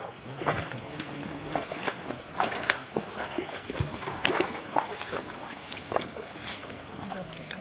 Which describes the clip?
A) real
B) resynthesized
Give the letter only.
B